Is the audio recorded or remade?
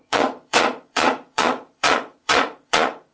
remade